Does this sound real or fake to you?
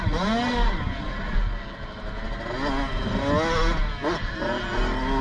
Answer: real